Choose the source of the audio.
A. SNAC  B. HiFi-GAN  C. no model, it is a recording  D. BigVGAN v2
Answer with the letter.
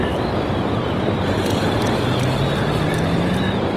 C